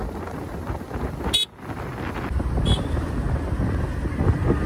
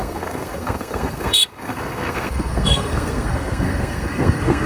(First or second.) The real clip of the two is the first